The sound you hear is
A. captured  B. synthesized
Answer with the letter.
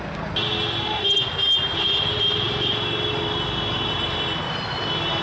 A